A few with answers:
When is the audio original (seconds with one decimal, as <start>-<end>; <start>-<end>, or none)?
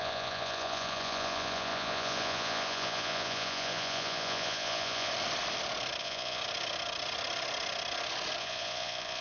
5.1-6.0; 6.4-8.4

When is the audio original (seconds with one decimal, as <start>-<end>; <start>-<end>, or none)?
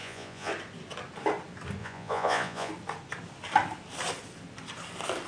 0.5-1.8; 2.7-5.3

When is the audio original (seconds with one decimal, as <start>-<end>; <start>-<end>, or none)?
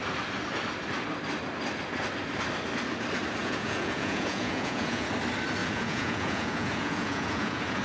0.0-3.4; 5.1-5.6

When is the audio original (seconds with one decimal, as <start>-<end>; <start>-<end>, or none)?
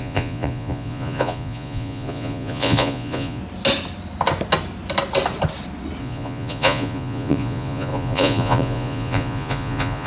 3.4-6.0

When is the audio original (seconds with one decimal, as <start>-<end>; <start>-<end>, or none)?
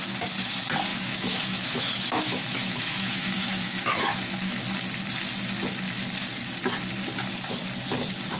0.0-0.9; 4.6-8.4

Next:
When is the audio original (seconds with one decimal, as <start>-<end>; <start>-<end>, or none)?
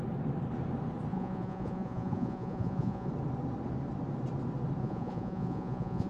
0.0-1.1; 3.1-4.8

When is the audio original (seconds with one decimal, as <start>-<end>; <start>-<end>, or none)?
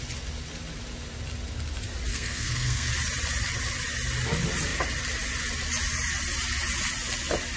0.0-2.1; 2.9-7.6